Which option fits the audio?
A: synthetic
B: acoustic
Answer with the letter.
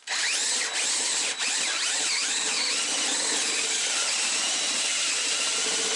B